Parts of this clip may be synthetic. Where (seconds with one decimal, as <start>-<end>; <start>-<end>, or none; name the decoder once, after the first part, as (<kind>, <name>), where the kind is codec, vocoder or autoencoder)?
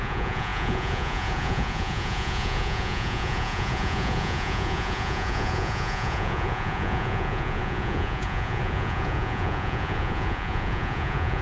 0.0-11.4 (vocoder, Vocos)